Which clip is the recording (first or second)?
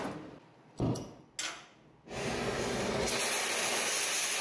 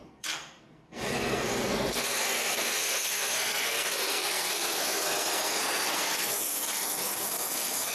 first